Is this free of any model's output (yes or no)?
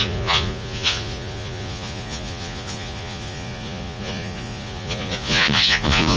no